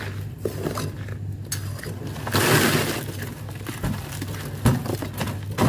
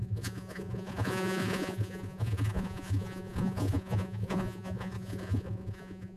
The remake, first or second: second